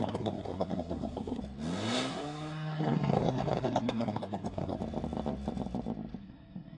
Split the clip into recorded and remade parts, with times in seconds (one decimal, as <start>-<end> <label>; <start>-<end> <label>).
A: 0.0-1.4 remade; 1.4-2.1 recorded; 2.1-4.8 remade; 4.8-6.2 recorded; 6.2-6.8 remade